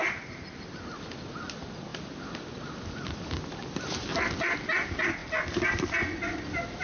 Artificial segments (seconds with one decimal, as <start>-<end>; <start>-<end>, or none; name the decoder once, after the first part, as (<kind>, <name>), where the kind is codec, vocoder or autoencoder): none